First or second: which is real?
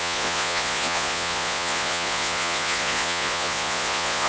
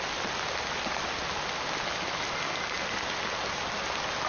second